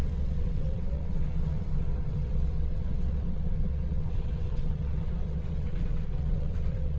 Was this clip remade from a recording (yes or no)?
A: yes